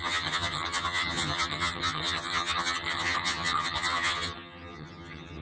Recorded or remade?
remade